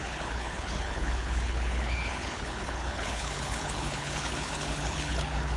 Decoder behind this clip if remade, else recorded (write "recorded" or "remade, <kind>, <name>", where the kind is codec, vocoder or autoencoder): remade, codec, HILCodec